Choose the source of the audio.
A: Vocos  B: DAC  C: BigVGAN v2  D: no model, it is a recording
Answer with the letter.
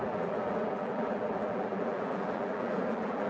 C